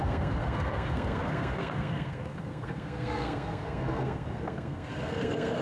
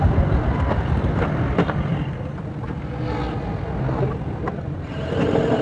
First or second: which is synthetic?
first